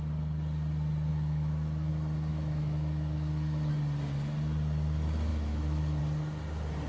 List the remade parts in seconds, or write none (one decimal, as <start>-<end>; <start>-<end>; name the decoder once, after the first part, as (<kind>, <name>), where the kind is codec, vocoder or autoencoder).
1.1-1.9 (autoencoder, DAC-VAE); 2.3-3.7; 5.3-6.0